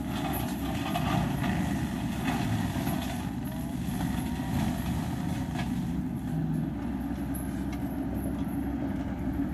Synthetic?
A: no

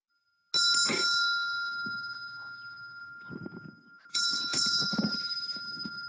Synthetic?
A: no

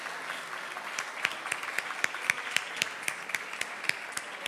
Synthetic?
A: no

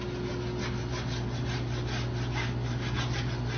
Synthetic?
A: no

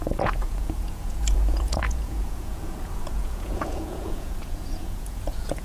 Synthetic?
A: yes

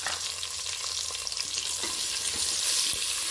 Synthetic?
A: no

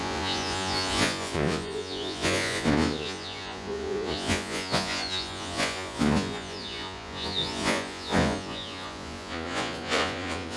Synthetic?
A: yes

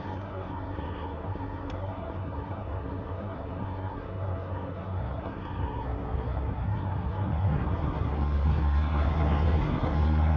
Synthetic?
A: yes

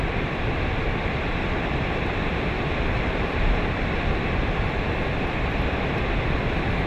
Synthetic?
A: yes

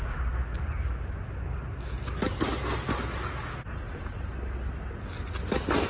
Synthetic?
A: no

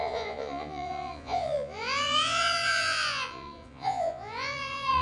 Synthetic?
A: yes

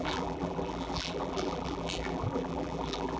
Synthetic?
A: yes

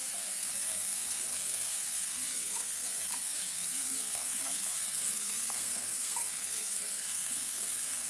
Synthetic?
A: yes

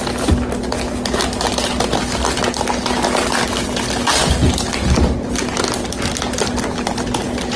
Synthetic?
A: no